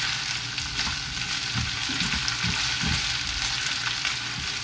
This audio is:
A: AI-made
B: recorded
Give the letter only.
B